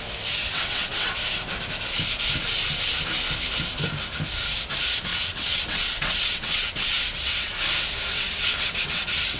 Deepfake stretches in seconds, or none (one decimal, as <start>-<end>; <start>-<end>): 0.4-1.1; 5.1-7.5; 8.1-9.4

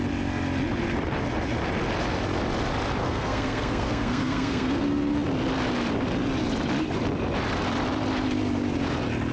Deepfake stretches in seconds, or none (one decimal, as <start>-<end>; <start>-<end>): 3.0-4.8

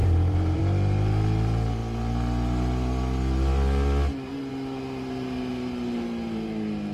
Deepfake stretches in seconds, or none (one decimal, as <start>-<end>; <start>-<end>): 0.0-0.6

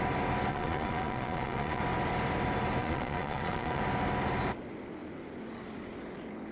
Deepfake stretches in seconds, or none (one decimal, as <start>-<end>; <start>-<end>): 0.5-1.8; 2.8-3.8

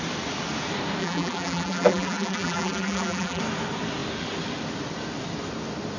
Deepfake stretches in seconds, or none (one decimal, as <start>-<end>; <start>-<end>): 1.0-3.4

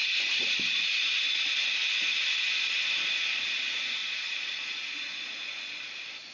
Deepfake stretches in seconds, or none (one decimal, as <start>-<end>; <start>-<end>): 0.0-1.2; 4.0-4.6

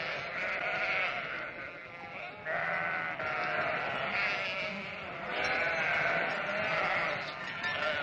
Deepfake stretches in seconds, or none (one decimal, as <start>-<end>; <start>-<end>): none

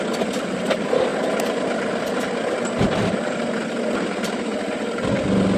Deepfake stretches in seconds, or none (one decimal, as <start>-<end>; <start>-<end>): none